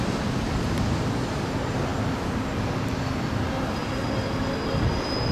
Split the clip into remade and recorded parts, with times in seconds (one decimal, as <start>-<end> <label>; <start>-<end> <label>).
0.0-5.3 recorded